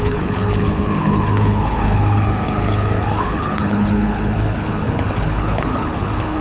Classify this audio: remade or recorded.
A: remade